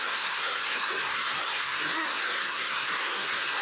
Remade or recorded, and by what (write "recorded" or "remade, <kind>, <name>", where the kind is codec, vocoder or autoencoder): remade, codec, SNAC